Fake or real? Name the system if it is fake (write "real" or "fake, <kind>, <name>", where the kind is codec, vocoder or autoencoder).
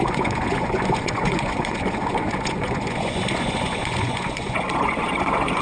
fake, vocoder, Vocos